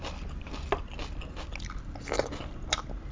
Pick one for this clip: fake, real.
real